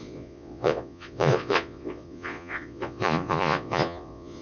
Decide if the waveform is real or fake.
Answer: fake